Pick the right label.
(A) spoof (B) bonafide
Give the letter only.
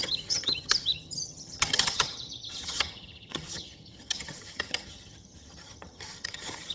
A